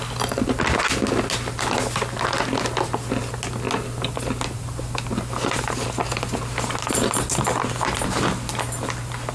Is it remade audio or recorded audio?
recorded